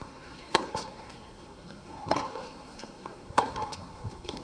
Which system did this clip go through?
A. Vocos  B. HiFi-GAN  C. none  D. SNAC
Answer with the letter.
D